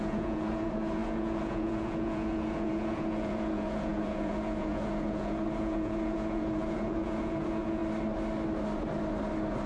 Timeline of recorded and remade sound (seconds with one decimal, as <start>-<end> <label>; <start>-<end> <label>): 0.0-7.8 remade; 7.8-9.7 recorded